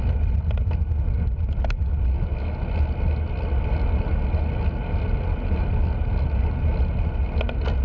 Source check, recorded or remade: recorded